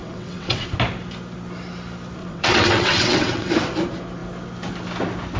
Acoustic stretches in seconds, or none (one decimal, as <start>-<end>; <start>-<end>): 0.7-2.2; 3.5-5.4